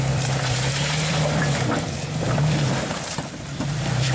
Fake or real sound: fake